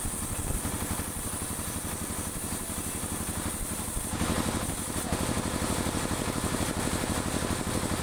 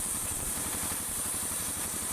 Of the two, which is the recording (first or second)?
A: first